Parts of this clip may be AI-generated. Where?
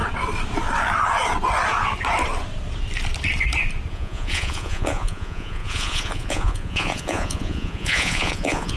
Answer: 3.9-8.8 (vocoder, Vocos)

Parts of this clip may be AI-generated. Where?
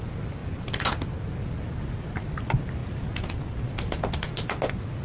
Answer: none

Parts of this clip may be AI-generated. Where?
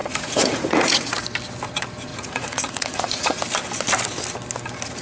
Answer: 0.0-1.1 (vocoder, Vocos); 2.1-3.4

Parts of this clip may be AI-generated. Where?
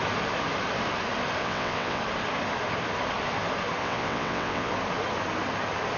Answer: 1.4-2.0 (vocoder, WaveNeXt); 3.8-4.7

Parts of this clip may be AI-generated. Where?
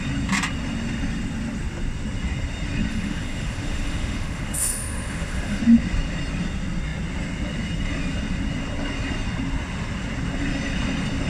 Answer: 2.9-5.6 (autoencoder, DAC-VAE)